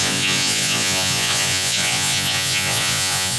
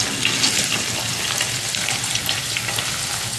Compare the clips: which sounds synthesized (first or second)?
first